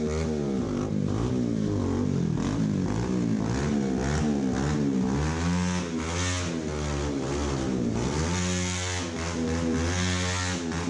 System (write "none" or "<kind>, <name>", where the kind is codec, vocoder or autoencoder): none